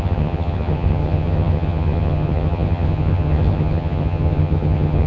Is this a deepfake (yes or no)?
yes